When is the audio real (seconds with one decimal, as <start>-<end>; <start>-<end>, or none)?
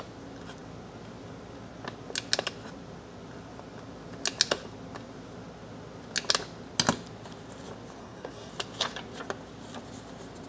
0.0-8.0; 8.5-10.5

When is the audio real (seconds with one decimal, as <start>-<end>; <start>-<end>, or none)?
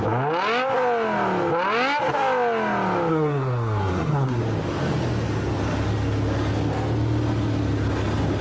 0.0-3.1; 4.4-8.4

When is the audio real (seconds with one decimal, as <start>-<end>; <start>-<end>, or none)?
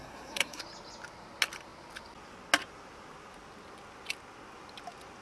0.6-5.2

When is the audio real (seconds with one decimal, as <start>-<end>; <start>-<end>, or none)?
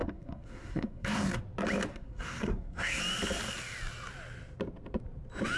1.4-1.9; 3.0-5.6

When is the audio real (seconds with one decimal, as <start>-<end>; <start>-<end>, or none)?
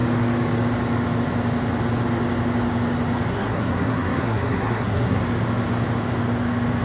0.0-3.3; 5.2-6.8